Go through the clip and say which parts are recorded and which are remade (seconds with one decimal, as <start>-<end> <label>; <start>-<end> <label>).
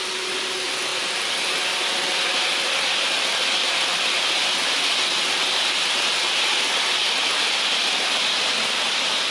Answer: 0.0-9.3 recorded